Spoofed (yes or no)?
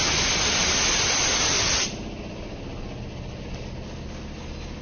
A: no